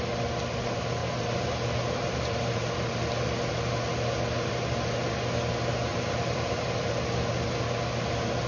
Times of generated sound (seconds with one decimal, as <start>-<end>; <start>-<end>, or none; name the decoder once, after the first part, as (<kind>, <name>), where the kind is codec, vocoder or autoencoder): 1.0-2.9 (vocoder, BigVGAN v2); 5.9-6.9